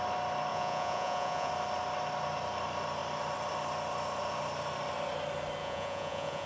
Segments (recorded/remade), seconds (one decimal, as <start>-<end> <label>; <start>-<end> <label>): 0.0-0.5 recorded; 0.5-1.5 remade; 1.5-5.6 recorded; 5.6-6.5 remade